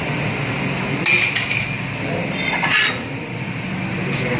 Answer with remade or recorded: recorded